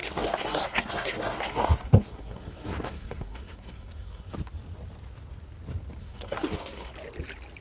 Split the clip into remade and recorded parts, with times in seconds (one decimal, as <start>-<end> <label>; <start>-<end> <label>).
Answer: 0.0-4.3 remade; 4.3-6.0 recorded; 6.0-6.9 remade; 6.9-7.6 recorded